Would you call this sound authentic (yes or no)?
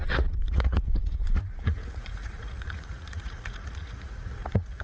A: no